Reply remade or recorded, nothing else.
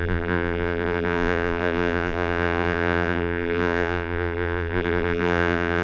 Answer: remade